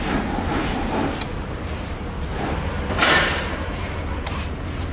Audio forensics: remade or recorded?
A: remade